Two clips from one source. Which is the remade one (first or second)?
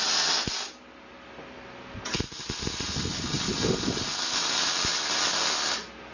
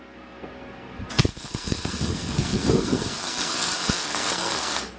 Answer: second